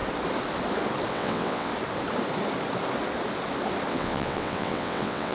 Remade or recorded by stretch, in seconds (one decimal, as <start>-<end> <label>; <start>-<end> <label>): 0.0-1.1 recorded; 1.1-1.7 remade; 1.7-3.9 recorded; 3.9-5.3 remade